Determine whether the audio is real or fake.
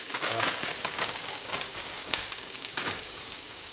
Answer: fake